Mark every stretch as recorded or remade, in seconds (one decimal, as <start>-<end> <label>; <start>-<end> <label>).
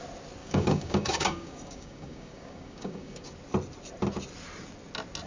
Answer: 0.0-0.4 recorded; 0.4-3.3 remade; 3.3-5.3 recorded